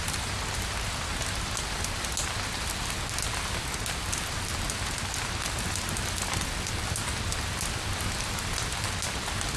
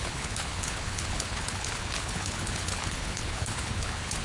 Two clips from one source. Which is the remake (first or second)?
second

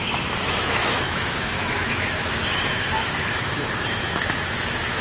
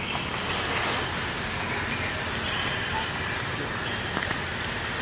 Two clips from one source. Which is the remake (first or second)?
first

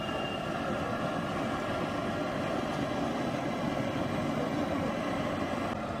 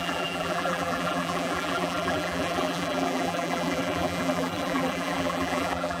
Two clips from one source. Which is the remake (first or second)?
second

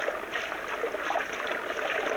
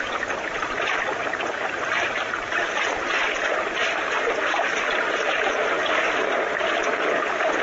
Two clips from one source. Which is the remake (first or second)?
second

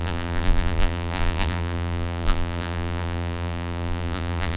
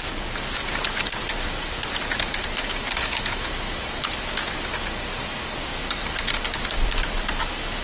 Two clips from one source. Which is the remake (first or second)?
first